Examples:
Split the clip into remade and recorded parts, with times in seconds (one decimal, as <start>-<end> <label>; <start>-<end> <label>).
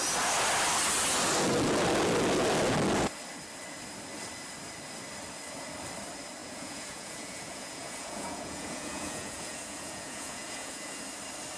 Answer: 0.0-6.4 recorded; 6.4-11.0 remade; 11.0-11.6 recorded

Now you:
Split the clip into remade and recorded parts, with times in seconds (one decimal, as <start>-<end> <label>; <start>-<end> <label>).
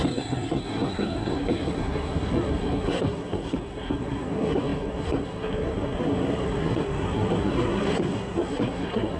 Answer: 0.0-9.2 remade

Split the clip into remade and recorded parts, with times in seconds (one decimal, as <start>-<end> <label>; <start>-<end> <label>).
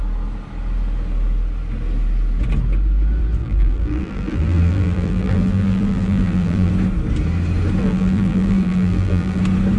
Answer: 0.0-3.4 recorded; 3.4-6.7 remade; 6.7-7.8 recorded; 7.8-9.4 remade; 9.4-9.8 recorded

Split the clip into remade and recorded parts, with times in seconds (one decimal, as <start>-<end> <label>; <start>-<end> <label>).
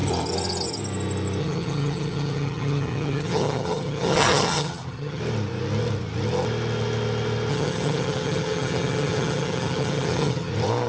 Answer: 0.0-1.4 recorded; 1.4-5.2 remade; 5.2-7.5 recorded; 7.5-10.5 remade; 10.5-10.9 recorded